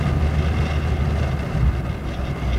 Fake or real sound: real